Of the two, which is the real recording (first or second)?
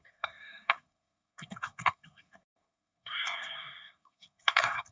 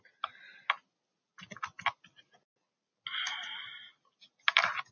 second